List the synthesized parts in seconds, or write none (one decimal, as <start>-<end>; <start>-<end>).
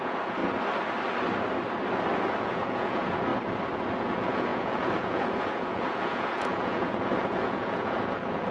0.0-0.4; 2.4-3.3; 4.0-8.5